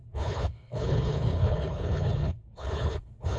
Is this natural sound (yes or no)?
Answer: no